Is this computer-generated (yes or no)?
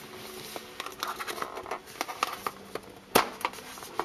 no